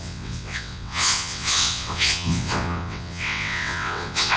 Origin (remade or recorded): remade